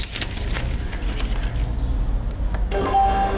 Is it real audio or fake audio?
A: real